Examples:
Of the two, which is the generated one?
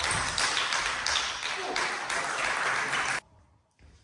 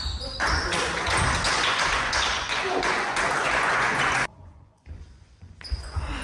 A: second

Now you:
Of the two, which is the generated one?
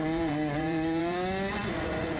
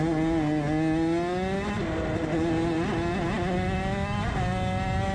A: first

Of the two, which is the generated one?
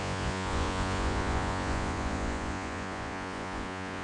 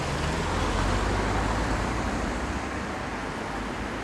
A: first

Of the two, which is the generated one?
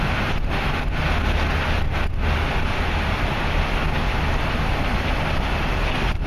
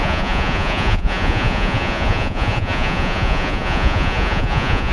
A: second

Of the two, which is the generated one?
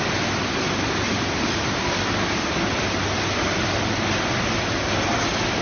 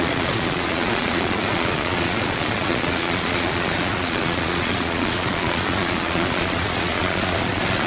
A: second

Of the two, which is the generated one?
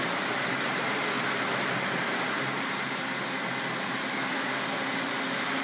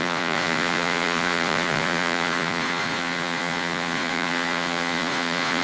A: second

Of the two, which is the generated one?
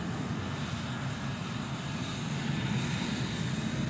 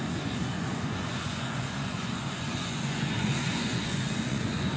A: second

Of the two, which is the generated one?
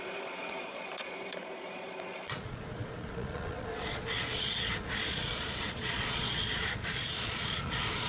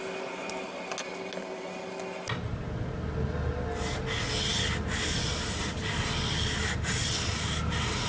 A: first